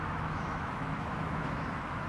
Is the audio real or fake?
fake